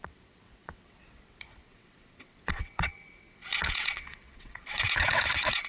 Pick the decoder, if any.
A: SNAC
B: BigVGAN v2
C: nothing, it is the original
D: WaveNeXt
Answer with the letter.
D